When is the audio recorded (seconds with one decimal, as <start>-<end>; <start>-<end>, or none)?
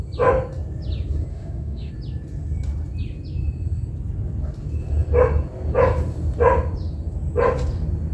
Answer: 0.0-1.3; 1.9-8.1